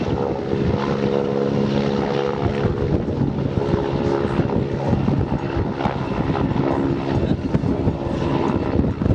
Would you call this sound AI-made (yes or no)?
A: no